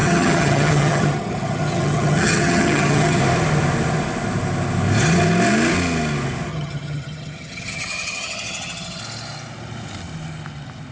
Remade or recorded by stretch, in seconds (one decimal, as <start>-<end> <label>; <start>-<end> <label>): 0.0-3.2 remade; 3.2-6.5 recorded; 6.5-9.0 remade; 9.0-10.9 recorded